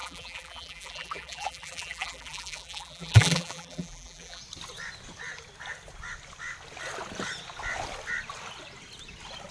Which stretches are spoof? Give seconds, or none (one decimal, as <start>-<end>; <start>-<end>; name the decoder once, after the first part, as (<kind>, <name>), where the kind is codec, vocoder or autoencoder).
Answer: 0.0-4.4 (vocoder, BigVGAN v2)